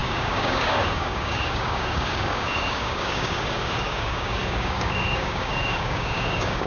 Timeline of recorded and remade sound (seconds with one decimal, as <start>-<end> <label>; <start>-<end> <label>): 0.0-6.7 remade